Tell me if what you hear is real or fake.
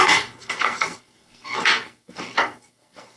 fake